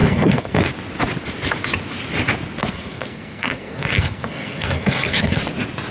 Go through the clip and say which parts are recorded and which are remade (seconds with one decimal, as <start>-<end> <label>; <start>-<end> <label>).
0.0-0.7 remade; 0.7-2.6 recorded; 2.6-5.4 remade; 5.4-5.9 recorded